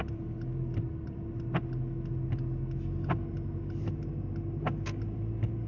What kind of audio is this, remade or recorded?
recorded